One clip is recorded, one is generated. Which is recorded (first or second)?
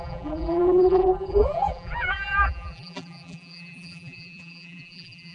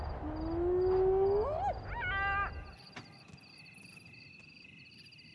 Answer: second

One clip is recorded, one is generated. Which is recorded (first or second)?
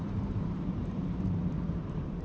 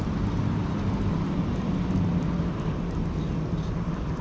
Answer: second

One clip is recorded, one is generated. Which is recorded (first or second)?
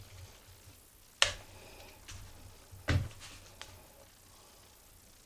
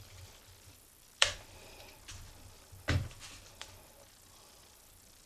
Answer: first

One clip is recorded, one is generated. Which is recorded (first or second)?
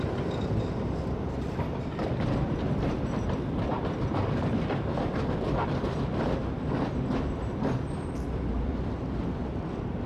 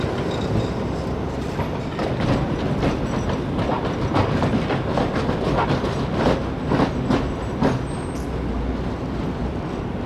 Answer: second